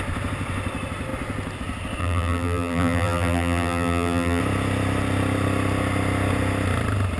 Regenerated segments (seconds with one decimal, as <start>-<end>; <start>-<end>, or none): 2.0-4.4